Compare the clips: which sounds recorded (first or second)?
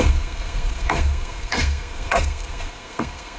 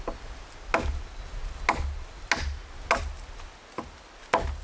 second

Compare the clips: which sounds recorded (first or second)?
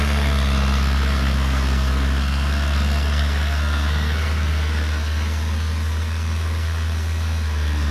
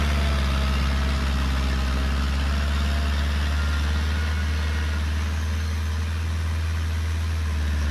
second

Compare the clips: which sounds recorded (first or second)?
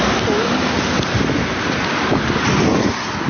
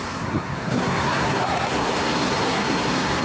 first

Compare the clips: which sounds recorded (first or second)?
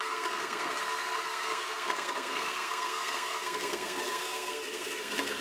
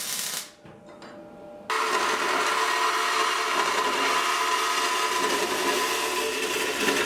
second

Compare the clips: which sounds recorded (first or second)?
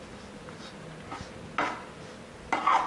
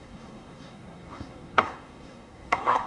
first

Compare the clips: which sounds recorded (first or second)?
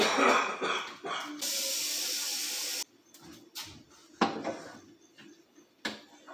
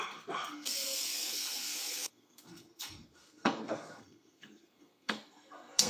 first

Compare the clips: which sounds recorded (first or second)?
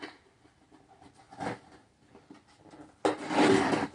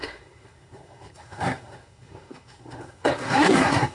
first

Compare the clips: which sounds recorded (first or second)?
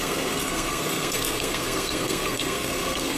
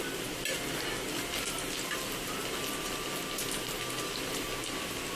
second